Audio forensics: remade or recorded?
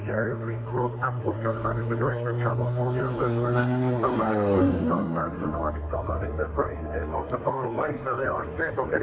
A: remade